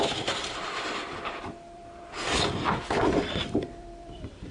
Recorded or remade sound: remade